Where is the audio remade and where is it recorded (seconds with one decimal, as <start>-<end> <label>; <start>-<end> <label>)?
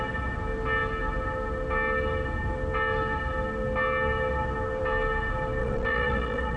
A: 0.0-5.6 recorded; 5.6-6.6 remade